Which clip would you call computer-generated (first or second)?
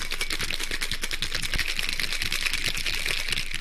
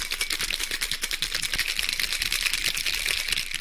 second